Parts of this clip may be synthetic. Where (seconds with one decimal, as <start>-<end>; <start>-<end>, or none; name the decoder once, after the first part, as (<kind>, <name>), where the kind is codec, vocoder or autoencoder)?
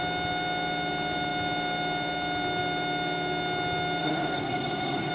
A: 4.0-5.1 (codec, SNAC)